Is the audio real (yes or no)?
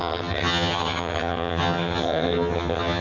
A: no